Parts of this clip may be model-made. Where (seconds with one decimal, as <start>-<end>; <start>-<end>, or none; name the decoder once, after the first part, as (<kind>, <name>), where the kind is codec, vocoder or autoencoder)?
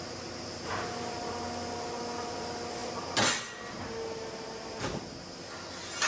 none